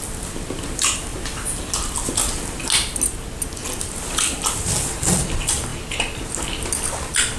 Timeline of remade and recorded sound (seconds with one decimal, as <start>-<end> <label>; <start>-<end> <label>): 0.0-7.4 recorded